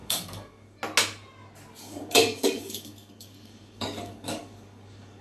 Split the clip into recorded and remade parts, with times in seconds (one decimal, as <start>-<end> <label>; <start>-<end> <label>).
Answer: 0.0-0.8 remade; 0.8-1.8 recorded; 1.8-5.2 remade